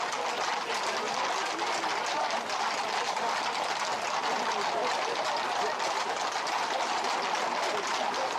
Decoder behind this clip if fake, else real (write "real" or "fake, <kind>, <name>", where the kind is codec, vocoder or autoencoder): real